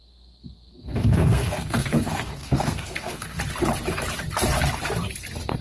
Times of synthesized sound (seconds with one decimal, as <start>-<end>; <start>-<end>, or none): 0.0-3.4

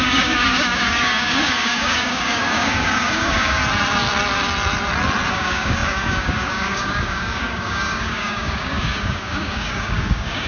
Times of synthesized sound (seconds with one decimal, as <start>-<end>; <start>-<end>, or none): 0.0-3.6; 5.3-10.5